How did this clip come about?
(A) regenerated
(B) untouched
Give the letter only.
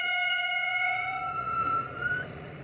A